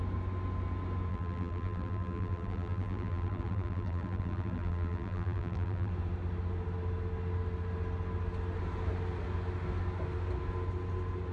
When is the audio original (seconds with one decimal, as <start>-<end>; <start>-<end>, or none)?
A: 0.0-1.1; 5.9-11.3